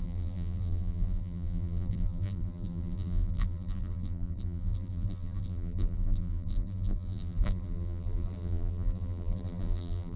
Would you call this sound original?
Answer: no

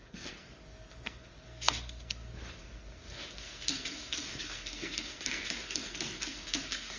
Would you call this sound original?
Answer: no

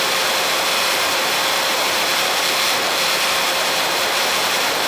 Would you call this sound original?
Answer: no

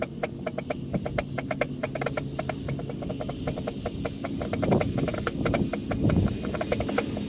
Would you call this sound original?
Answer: yes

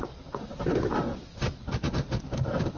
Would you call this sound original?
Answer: yes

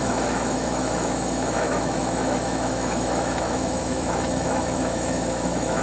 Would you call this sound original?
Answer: no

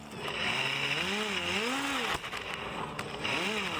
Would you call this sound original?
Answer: yes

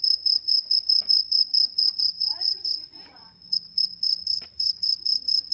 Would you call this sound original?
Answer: no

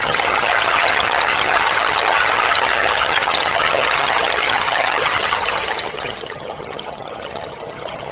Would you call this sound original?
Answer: no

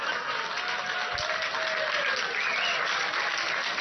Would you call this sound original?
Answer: yes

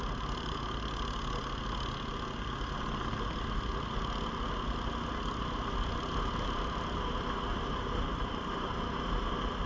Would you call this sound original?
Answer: yes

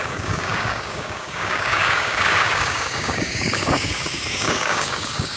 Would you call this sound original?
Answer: no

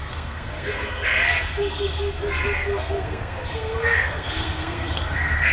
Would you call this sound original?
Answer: no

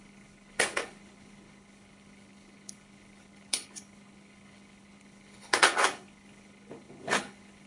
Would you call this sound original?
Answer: no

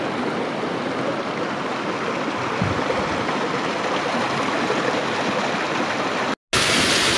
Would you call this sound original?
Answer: yes